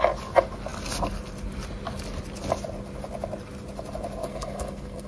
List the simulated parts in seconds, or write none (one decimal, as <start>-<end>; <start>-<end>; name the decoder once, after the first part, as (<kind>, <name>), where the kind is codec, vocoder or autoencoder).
4.2-5.1 (codec, SNAC)